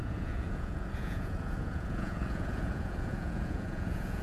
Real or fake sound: fake